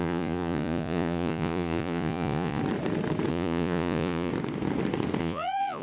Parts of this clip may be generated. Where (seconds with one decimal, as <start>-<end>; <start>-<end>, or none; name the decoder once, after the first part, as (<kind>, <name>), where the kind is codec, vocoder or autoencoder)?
0.0-2.6 (vocoder, Vocos); 3.3-4.3; 5.2-5.8